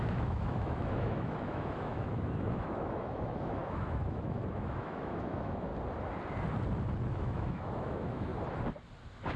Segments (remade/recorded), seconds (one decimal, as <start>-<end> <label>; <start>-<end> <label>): 0.0-5.7 remade; 5.7-7.1 recorded; 7.1-8.3 remade; 8.3-9.4 recorded